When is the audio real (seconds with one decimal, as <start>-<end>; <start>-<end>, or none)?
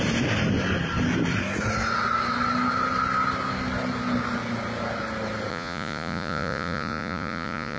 0.0-5.5